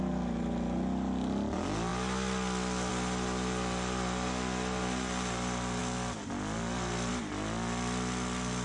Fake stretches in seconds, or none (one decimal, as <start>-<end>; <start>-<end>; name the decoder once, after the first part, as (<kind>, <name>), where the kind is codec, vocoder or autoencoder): none